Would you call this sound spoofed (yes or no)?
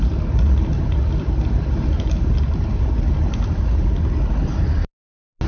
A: no